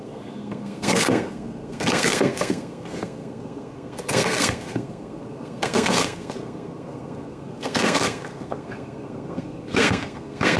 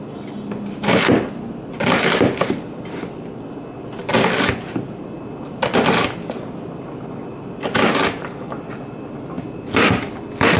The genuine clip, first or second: second